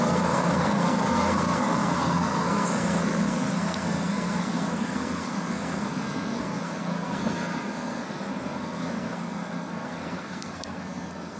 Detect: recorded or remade remade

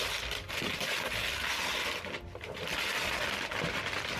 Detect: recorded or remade recorded